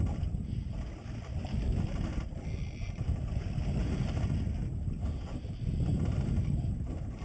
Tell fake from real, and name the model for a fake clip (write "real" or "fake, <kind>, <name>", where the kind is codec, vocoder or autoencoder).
real